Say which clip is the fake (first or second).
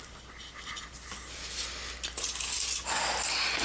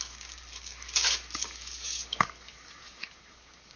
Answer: second